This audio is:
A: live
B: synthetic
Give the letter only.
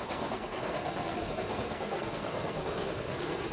B